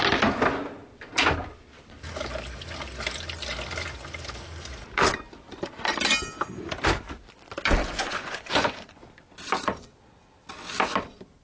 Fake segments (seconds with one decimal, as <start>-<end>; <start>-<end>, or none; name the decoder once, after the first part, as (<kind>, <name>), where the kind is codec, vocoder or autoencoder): 7.8-9.0 (vocoder, Vocos)